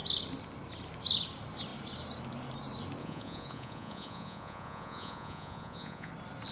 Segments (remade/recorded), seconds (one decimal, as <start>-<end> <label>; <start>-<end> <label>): 0.0-3.0 recorded; 3.0-6.1 remade; 6.1-6.5 recorded